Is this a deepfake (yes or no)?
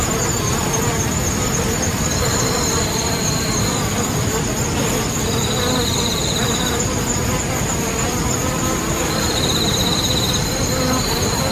yes